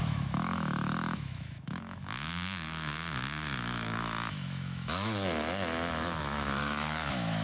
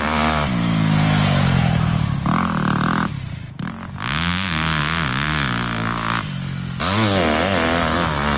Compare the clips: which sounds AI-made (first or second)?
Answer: first